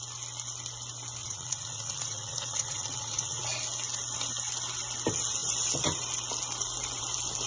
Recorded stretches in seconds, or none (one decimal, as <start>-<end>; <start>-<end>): 0.0-1.2; 3.4-7.5